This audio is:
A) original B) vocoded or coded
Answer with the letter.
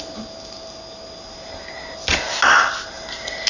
A